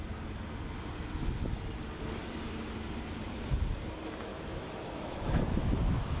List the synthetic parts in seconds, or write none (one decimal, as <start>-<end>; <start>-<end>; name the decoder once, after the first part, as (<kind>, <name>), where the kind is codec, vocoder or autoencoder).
4.3-6.2 (autoencoder, DAC-VAE)

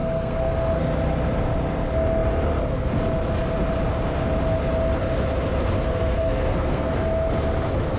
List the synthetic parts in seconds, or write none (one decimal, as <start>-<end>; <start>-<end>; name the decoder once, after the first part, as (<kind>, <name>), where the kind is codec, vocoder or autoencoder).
0.0-0.8 (codec, SNAC); 5.9-6.9

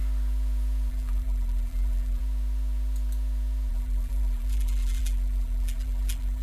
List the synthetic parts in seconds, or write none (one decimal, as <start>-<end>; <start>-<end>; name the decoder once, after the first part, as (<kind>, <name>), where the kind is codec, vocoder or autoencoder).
0.9-2.2 (vocoder, BigVGAN v2); 3.7-6.4